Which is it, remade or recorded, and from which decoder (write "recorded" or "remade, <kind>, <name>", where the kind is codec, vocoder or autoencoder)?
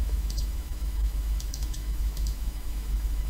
remade, autoencoder, DAC-VAE